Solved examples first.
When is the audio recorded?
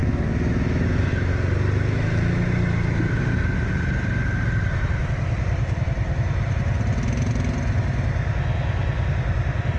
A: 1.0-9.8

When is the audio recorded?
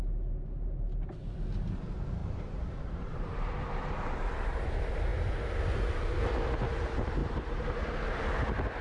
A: 0.0-2.2; 3.6-7.2; 8.2-8.8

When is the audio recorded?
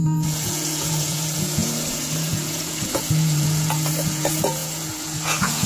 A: none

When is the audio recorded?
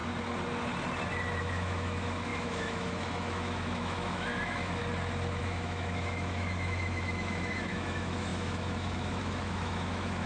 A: 0.0-1.4; 4.8-5.4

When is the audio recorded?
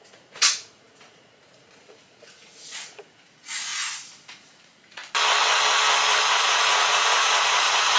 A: 3.7-4.3; 5.0-6.4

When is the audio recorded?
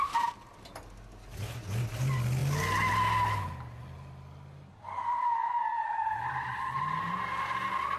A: 0.0-8.0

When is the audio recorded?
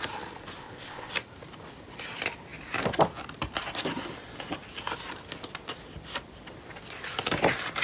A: 0.0-0.6; 1.1-7.8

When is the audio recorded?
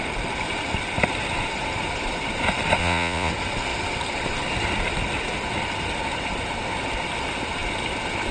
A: 0.0-2.8; 3.3-8.3